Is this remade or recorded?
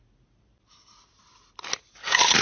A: recorded